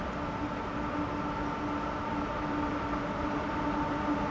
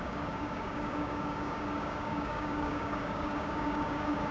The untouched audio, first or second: first